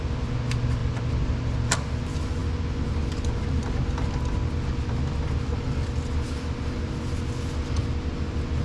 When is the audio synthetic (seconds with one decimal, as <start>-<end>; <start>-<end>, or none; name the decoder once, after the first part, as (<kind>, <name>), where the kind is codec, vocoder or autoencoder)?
none